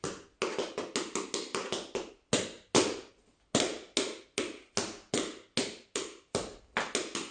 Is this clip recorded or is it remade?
recorded